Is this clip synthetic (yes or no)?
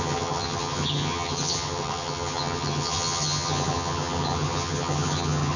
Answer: yes